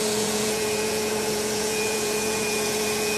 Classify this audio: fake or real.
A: fake